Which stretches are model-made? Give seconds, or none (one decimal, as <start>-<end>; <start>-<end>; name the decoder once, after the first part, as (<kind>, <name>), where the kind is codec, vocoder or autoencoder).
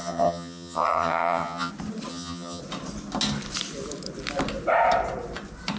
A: 0.0-1.7 (vocoder, HiFi-GAN); 2.1-2.6